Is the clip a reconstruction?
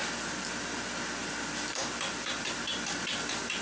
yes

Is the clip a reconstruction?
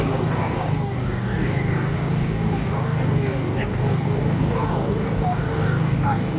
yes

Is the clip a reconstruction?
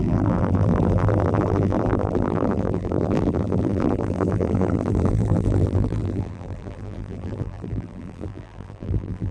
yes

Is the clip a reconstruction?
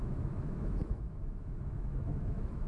yes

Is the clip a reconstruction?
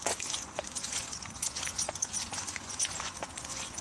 yes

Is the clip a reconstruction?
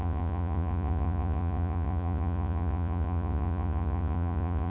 yes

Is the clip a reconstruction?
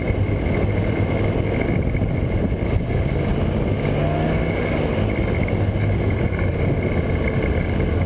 no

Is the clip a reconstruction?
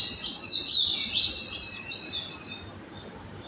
no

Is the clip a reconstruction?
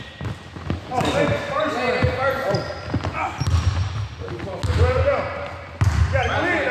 no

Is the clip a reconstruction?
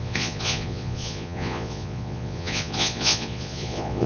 yes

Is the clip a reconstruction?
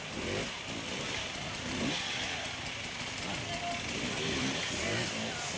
no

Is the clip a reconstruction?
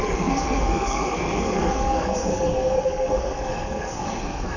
yes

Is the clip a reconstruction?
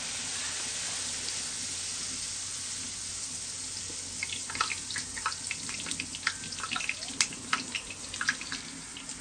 no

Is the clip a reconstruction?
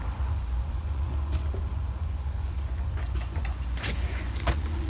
yes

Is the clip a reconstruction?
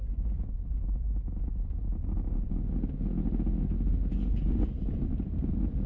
no